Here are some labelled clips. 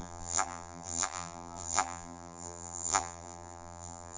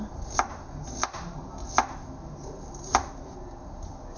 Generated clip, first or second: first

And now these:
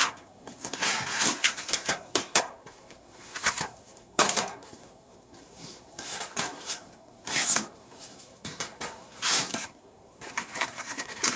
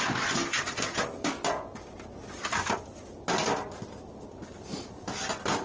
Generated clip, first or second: first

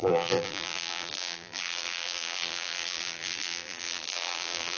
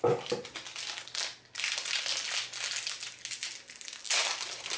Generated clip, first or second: first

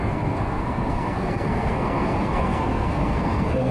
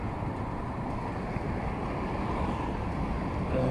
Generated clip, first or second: first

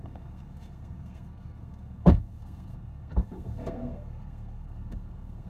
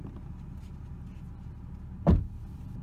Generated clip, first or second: first